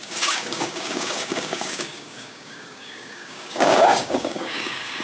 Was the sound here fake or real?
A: fake